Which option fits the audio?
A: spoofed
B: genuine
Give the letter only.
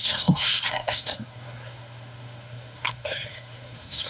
A